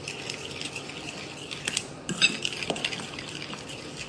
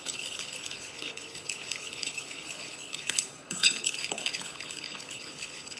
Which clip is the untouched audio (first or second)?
first